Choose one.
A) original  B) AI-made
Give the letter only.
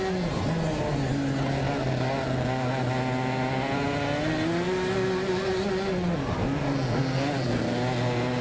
A